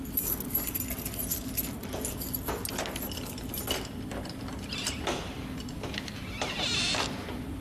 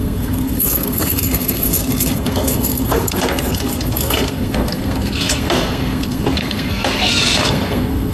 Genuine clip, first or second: first